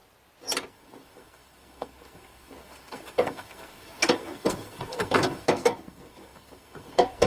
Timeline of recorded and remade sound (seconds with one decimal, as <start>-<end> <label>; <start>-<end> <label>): 0.0-0.7 recorded; 0.7-7.3 remade